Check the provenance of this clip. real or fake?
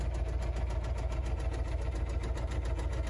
fake